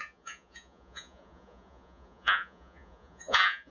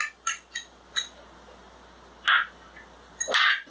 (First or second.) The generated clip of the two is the first